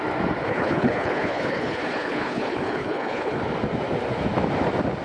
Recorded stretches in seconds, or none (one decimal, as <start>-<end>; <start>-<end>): 0.0-0.4; 3.4-5.0